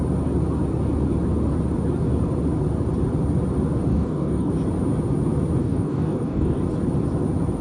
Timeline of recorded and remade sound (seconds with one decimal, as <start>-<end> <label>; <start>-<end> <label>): 0.0-3.9 recorded; 3.9-4.5 remade; 4.5-5.6 recorded; 5.6-6.6 remade; 6.6-7.6 recorded